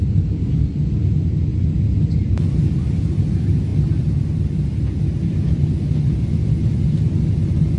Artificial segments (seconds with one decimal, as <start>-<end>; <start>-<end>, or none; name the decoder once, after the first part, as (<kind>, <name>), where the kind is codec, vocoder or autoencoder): none